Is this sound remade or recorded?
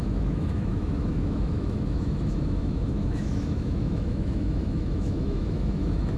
remade